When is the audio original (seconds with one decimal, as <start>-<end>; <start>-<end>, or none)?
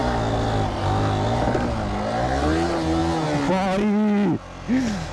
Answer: 0.0-5.1